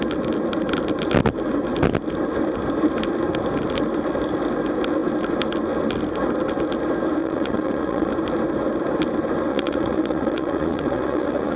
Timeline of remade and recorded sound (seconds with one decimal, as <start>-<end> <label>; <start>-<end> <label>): 0.0-7.2 recorded; 7.2-8.1 remade; 8.1-9.5 recorded; 9.5-11.6 remade